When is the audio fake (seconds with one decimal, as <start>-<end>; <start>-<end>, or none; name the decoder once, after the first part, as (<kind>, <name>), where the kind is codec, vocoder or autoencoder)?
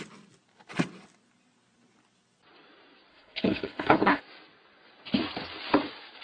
3.1-4.2 (codec, HILCodec)